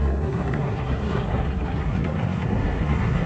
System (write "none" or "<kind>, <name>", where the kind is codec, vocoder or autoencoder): codec, SNAC